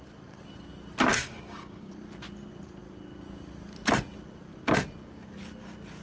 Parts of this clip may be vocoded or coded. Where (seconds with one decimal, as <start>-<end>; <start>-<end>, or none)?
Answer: 1.1-1.9